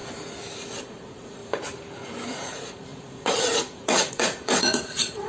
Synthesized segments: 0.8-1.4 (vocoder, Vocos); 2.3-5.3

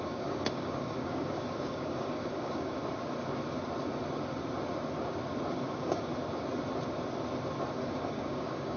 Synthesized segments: 0.0-2.8 (codec, DAC); 5.5-6.1; 7.7-8.8

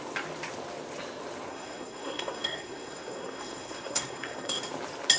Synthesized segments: 1.5-4.6 (codec, SNAC)

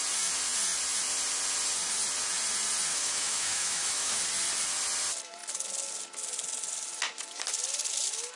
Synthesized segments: 2.9-4.2 (autoencoder, DAC-VAE)

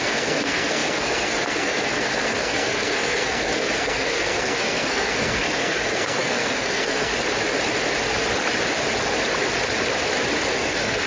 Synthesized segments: 0.0-7.1 (codec, SNAC); 10.5-11.1